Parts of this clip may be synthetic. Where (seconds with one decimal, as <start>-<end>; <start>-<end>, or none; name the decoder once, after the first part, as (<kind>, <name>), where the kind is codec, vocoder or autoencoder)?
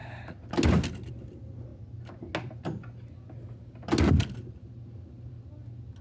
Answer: none